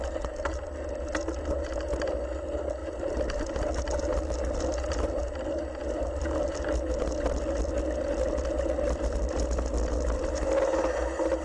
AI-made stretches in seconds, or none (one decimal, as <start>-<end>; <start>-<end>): none